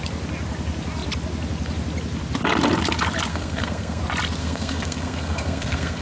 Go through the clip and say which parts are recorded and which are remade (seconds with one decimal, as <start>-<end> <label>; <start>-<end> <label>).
0.0-3.3 recorded; 3.3-4.0 remade; 4.0-4.4 recorded; 4.4-6.0 remade